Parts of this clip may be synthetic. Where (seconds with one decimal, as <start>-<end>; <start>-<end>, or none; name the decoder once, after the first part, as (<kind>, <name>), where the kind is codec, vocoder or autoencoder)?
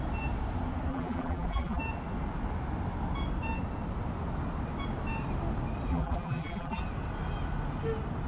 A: 0.9-1.8 (vocoder, BigVGAN v2); 5.9-6.8